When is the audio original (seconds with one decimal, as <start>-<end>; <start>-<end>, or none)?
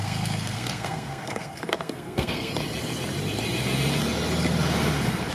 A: 2.5-5.3